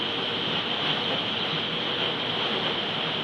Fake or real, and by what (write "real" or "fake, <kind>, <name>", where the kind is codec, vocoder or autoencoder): real